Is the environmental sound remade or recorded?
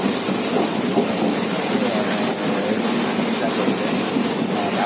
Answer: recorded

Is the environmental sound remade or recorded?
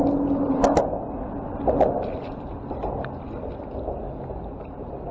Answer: recorded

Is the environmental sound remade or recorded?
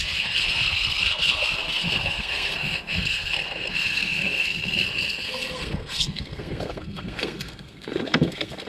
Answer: remade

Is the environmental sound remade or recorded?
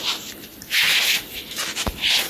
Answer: recorded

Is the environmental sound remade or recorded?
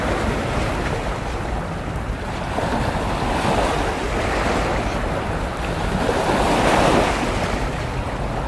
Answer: recorded